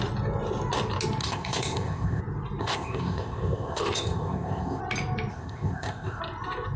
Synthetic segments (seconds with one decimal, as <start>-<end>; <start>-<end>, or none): 1.2-2.2; 2.6-4.8; 5.3-6.2